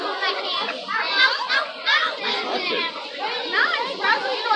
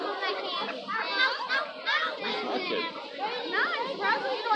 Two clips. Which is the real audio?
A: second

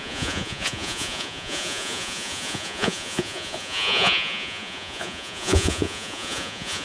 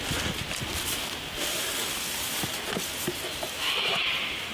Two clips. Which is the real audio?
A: second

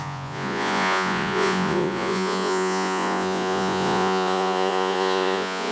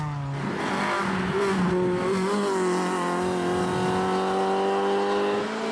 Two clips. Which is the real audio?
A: second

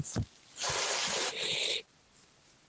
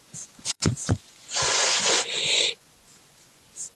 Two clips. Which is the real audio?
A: first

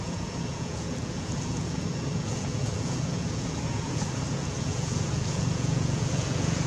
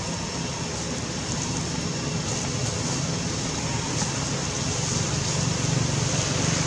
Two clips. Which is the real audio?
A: second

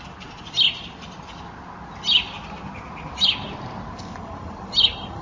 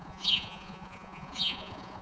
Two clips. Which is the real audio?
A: first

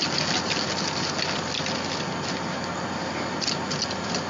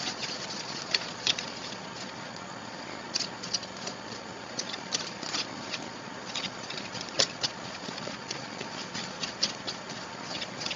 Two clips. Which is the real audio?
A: first